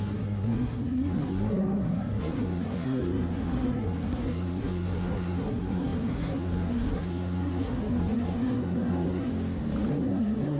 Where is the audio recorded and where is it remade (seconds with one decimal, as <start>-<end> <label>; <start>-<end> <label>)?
0.0-9.3 remade; 9.3-10.0 recorded; 10.0-10.6 remade